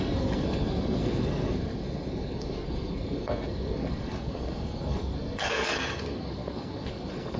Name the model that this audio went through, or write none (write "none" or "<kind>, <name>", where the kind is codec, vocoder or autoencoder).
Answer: codec, SNAC